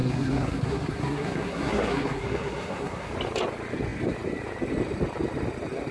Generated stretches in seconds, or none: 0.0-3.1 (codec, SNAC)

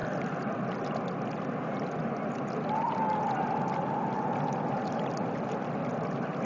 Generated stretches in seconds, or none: none

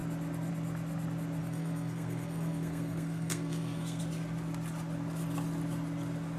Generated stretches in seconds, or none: 1.4-4.0 (codec, SNAC)